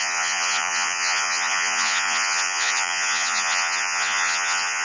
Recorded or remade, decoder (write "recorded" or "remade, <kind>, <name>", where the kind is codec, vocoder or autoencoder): remade, vocoder, Vocos